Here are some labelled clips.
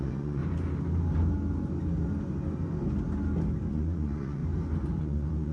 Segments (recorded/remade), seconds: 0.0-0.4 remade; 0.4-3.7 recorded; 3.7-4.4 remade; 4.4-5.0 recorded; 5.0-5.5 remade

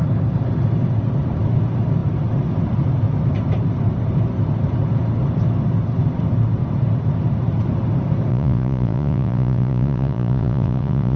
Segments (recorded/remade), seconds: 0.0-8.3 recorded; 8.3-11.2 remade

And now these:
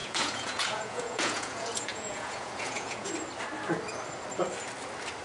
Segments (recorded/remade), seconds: 0.0-3.1 remade; 3.1-5.2 recorded

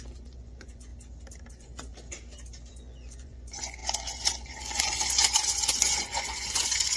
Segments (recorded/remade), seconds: 0.0-0.9 remade; 0.9-1.5 recorded; 1.5-1.9 remade; 1.9-2.7 recorded; 2.7-7.0 remade

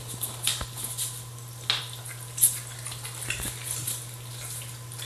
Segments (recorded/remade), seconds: 0.0-5.1 recorded

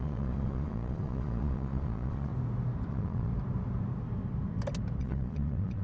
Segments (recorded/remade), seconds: 0.0-2.3 remade; 2.3-2.9 recorded; 2.9-3.3 remade; 3.3-5.0 recorded; 5.0-5.8 remade